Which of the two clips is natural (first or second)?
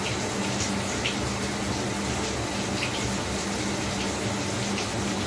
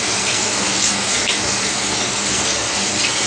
first